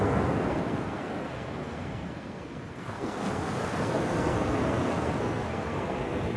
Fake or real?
fake